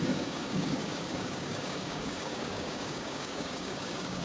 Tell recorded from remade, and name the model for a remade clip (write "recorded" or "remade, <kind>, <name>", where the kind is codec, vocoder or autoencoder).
remade, codec, DAC